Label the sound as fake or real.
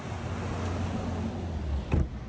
real